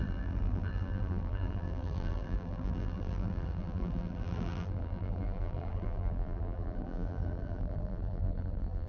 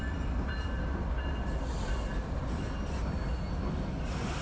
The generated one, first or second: first